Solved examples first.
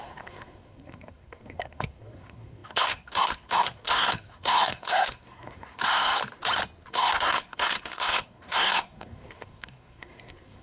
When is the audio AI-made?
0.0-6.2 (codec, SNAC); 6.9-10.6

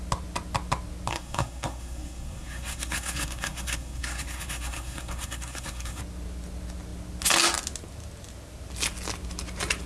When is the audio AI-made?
1.1-6.0 (codec, SNAC)

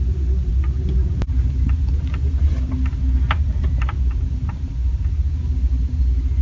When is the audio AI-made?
none

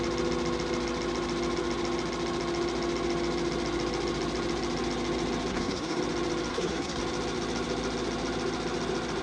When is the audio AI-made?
5.5-6.0 (codec, SNAC); 6.5-7.0